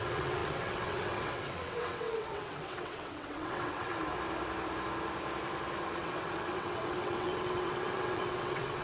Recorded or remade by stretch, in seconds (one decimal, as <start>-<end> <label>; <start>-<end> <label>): 0.0-3.9 remade; 3.9-5.9 recorded; 5.9-8.8 remade